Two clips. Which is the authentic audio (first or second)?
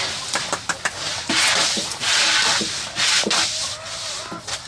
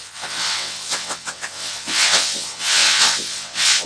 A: first